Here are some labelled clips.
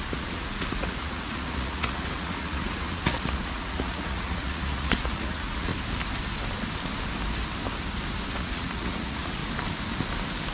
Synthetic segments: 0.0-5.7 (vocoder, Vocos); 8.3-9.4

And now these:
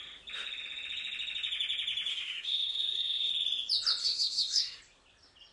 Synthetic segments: 2.1-3.3 (codec, SNAC); 4.0-4.8

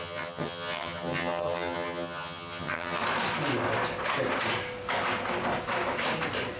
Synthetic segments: 0.0-3.0 (vocoder, HiFi-GAN)

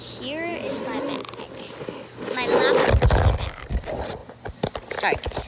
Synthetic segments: none